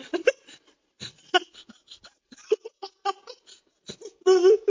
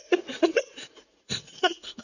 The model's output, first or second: second